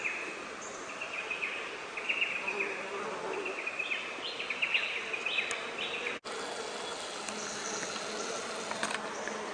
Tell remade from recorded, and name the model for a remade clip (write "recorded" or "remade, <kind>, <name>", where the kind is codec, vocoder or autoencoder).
recorded